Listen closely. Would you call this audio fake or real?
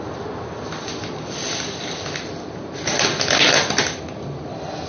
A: real